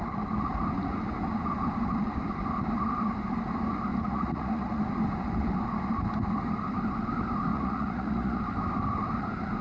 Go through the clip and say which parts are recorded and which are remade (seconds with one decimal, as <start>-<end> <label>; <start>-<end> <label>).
0.0-3.9 recorded; 3.9-4.9 remade; 4.9-7.5 recorded; 7.5-8.4 remade; 8.4-9.6 recorded